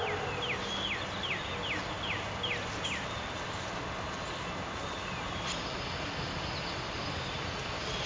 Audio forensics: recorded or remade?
recorded